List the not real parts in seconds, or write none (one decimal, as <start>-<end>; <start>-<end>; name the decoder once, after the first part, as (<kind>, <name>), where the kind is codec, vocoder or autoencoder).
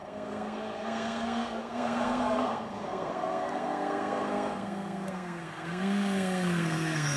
0.0-7.2 (codec, SNAC)